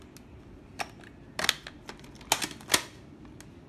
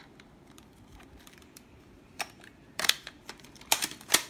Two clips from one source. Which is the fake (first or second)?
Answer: second